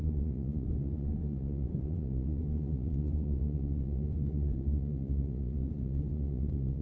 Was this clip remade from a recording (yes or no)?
yes